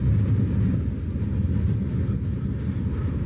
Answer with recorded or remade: recorded